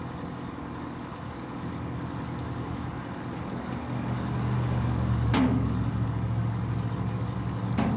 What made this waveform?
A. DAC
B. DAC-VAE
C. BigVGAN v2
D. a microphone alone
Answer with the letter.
A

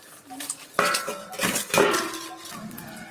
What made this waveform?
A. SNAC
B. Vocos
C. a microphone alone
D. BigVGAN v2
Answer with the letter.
C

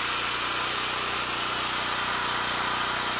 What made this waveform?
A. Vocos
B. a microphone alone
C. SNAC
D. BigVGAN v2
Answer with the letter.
B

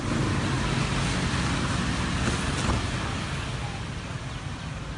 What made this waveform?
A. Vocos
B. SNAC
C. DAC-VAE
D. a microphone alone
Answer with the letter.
D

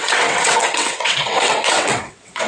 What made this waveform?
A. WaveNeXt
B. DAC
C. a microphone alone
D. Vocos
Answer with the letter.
A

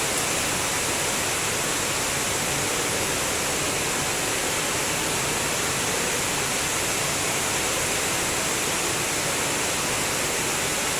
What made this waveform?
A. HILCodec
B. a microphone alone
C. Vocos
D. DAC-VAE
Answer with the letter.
B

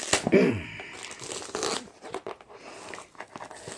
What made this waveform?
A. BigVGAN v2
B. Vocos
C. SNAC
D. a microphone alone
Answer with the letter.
D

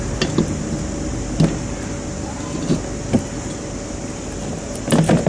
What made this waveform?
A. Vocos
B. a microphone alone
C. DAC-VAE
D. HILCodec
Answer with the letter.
B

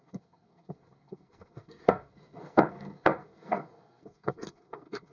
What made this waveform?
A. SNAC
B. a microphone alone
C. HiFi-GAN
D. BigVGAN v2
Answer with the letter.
A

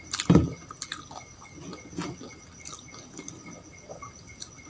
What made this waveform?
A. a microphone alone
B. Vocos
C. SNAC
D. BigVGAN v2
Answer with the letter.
A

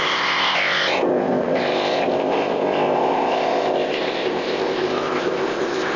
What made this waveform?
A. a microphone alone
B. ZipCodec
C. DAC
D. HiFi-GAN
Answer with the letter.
B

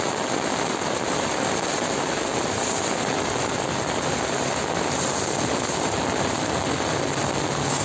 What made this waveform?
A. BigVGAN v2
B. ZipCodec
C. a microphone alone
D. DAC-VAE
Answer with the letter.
C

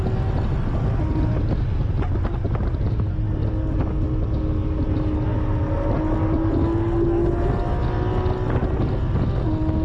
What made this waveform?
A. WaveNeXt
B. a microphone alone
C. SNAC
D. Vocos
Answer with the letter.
B